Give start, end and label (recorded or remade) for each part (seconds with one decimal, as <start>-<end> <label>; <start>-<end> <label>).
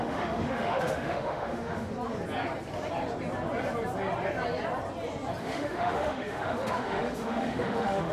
0.0-1.9 remade; 1.9-5.4 recorded; 5.4-8.1 remade